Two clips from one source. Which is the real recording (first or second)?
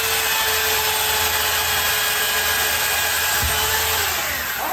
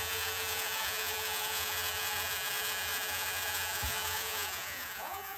first